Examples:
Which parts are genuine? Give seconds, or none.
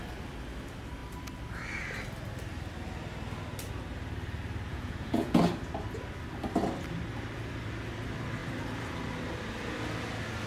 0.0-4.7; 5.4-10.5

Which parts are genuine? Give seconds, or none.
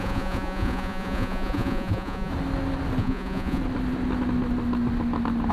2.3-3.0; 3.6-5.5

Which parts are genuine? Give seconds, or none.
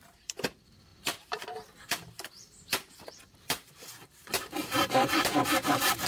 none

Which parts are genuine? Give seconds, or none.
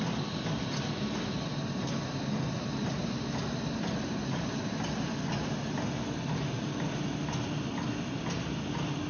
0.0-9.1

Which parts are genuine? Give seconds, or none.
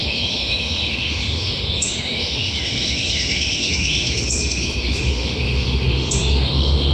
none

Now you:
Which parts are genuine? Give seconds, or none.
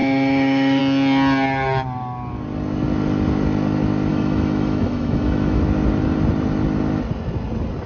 0.8-4.1; 5.6-7.9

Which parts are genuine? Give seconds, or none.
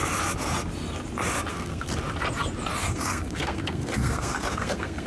0.0-1.5; 1.9-2.8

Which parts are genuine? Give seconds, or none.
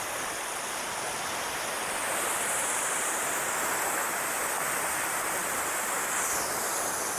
0.0-2.0; 3.5-7.2